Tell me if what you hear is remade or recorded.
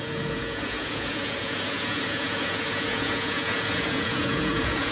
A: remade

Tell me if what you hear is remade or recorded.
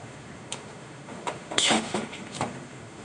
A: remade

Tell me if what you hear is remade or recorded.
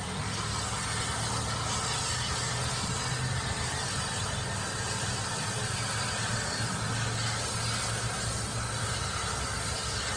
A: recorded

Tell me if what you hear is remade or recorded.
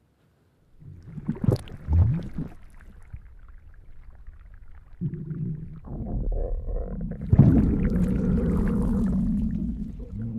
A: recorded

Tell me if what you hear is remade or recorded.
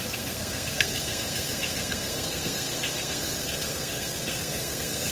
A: remade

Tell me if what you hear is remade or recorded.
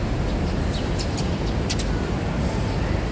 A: recorded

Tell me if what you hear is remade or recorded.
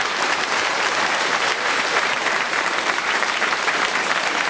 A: remade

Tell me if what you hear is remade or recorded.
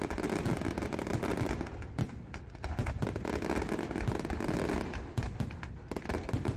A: recorded